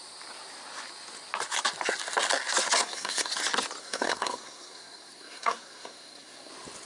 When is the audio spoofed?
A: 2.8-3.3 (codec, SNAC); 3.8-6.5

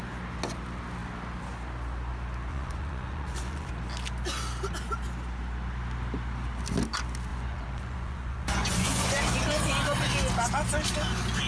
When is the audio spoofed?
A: 2.5-3.7 (vocoder, Vocos); 7.3-9.2

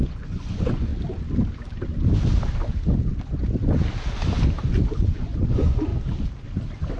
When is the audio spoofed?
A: 0.0-0.9 (vocoder, Vocos); 5.0-5.9

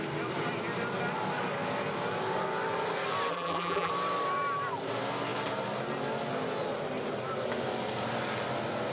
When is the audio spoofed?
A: 3.3-3.9 (vocoder, BigVGAN v2)

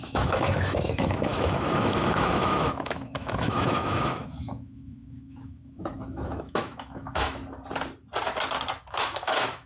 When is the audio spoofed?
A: 0.0-7.4 (autoencoder, DAC-VAE); 8.9-9.7

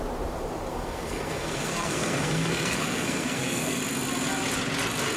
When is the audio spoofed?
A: 0.7-3.8 (codec, SNAC)

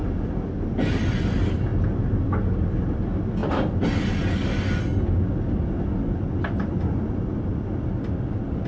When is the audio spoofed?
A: none